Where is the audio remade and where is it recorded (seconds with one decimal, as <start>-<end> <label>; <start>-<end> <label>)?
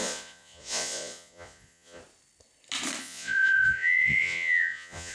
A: 0.0-2.0 remade; 2.0-3.0 recorded; 3.0-5.1 remade